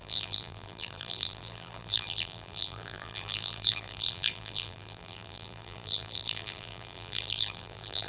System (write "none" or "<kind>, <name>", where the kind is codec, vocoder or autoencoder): vocoder, BigVGAN v2